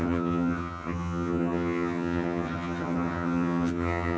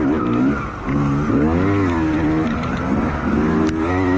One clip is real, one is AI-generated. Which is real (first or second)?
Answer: second